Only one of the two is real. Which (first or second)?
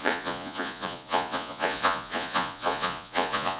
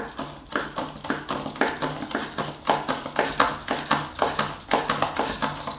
second